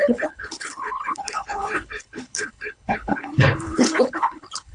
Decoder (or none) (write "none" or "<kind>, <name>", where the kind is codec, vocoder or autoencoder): codec, HILCodec